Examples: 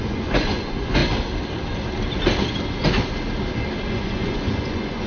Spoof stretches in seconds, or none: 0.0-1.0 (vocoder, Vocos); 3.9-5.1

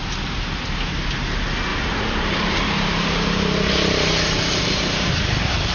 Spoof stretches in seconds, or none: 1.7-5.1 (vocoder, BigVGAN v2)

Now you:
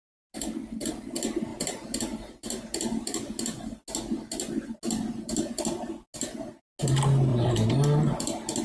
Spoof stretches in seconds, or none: none

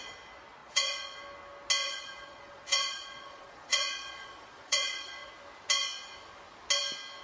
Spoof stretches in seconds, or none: 0.6-1.2 (vocoder, Vocos); 1.8-5.3